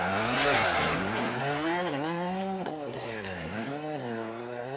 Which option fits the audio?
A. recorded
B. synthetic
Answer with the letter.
B